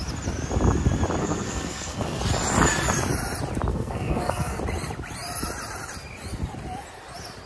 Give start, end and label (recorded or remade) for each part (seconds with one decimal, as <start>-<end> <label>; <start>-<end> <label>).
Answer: 0.0-1.2 recorded; 1.2-2.2 remade; 2.2-3.7 recorded; 3.7-4.6 remade; 4.6-7.5 recorded

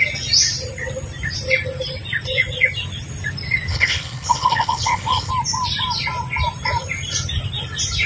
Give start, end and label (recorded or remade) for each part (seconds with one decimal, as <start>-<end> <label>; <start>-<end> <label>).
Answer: 0.0-3.7 recorded; 3.7-5.3 remade; 5.3-8.1 recorded

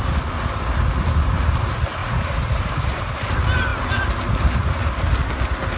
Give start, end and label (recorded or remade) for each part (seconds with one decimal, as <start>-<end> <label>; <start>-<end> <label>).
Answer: 0.0-2.0 recorded; 2.0-3.3 remade; 3.3-5.8 recorded

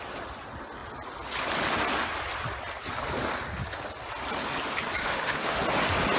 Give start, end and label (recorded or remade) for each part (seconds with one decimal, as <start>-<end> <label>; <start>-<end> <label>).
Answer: 0.0-5.0 recorded; 5.0-5.6 remade; 5.6-6.2 recorded

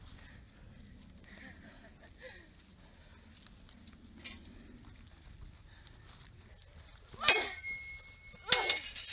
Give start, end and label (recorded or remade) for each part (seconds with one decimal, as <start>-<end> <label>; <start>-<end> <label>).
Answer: 0.0-9.1 recorded

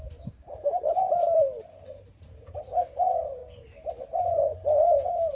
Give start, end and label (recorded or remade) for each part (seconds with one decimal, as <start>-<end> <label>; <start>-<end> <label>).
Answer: 0.0-3.4 remade; 3.4-4.1 recorded; 4.1-5.3 remade

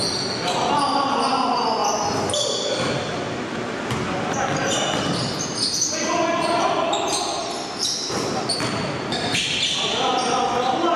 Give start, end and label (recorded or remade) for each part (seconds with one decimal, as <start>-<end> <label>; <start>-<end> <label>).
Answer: 0.0-11.0 recorded

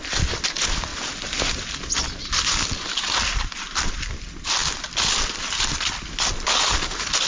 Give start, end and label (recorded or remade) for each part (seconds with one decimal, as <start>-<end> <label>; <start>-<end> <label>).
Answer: 0.0-4.6 recorded; 4.6-5.6 remade; 5.6-7.3 recorded